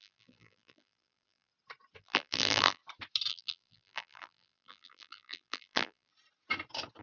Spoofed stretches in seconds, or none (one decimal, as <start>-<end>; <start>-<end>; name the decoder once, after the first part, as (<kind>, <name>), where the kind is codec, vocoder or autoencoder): 0.0-1.5 (vocoder, BigVGAN v2); 2.0-2.8; 3.3-6.1